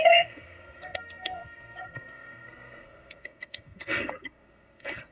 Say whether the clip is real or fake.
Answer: fake